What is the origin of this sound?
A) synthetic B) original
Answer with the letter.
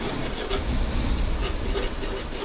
B